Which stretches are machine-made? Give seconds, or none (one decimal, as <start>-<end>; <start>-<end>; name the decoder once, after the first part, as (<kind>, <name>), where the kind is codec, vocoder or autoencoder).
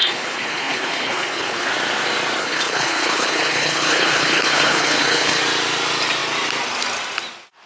0.0-1.7 (codec, HILCodec); 2.4-5.4